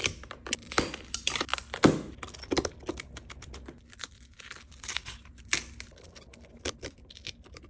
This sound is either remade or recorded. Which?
recorded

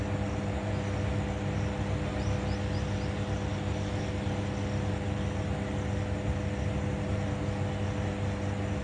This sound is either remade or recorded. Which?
recorded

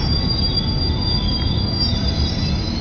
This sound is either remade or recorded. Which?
recorded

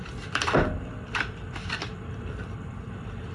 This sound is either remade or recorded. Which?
recorded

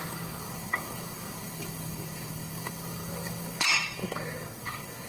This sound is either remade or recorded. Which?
remade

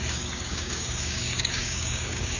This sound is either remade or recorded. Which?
remade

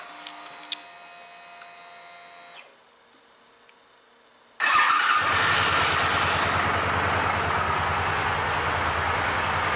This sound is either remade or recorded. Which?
recorded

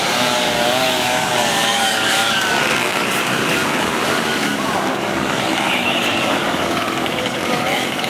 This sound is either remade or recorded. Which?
remade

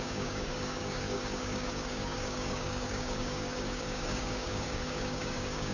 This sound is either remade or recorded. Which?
remade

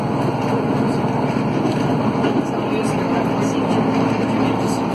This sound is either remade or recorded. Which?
recorded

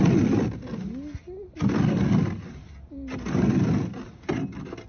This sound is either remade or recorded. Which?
recorded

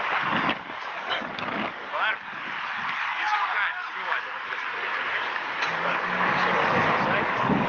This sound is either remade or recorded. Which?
remade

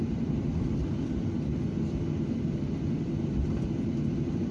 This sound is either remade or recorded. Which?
recorded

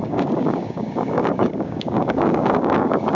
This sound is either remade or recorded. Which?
remade